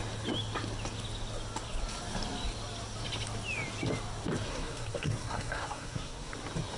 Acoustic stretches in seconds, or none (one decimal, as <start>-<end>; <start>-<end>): 0.0-4.5; 6.3-6.8